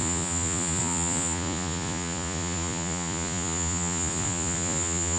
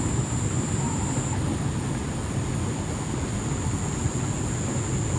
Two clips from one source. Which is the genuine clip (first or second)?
second